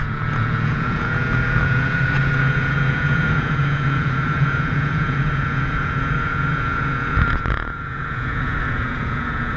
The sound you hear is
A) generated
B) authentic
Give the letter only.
A